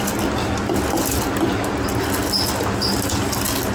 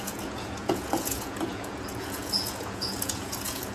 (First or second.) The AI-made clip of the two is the second